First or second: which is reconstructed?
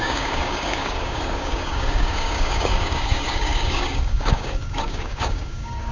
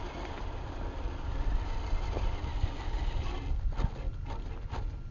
first